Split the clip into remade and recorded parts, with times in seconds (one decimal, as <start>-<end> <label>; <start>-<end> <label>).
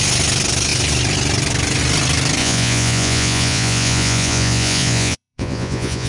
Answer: 0.0-2.4 recorded; 2.4-6.1 remade